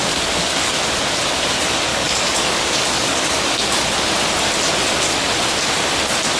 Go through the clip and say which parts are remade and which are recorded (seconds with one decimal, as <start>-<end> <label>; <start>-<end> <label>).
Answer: 0.0-0.8 remade; 0.8-1.9 recorded; 1.9-3.9 remade; 3.9-6.4 recorded